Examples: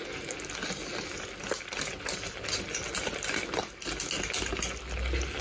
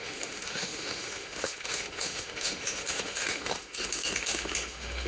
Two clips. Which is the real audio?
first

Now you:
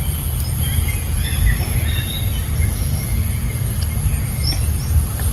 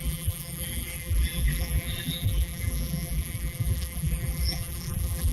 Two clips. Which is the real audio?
first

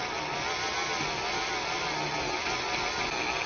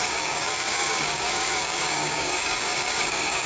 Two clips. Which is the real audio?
first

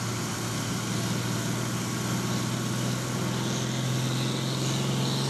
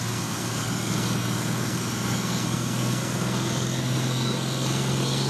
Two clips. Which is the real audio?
first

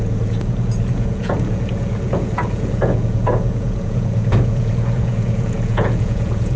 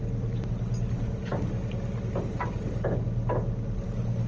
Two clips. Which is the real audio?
second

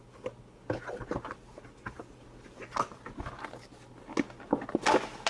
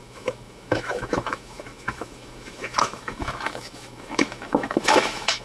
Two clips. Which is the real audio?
first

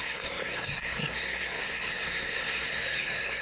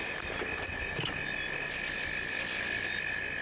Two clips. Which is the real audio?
second